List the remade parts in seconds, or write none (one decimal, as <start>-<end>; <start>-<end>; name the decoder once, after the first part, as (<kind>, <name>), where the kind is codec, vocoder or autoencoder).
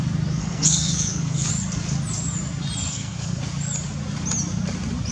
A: 0.4-1.5 (codec, SNAC); 2.9-3.4